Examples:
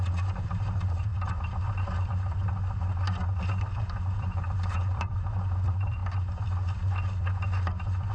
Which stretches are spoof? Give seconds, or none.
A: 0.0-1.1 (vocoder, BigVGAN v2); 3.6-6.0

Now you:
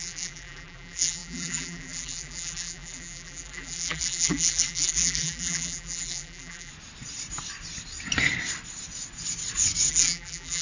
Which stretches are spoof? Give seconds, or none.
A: 0.0-6.7 (vocoder, BigVGAN v2); 9.9-10.6

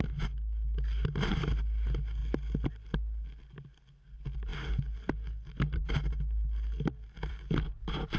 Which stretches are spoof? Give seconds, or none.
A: none

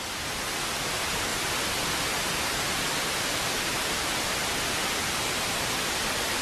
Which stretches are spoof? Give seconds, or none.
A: none

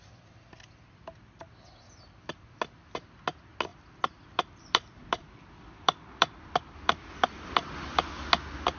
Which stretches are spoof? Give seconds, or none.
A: 3.7-7.7 (vocoder, BigVGAN v2)

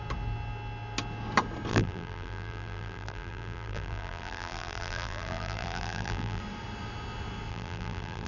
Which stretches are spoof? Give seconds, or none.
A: 1.7-6.4 (vocoder, BigVGAN v2); 7.5-8.3

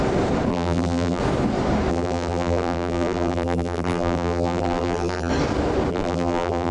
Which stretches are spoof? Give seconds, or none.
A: 0.5-1.2 (vocoder, BigVGAN v2); 1.9-5.3; 5.9-6.7

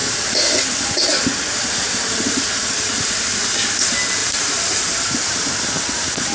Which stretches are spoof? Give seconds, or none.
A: 0.0-2.8 (vocoder, BigVGAN v2); 4.2-6.3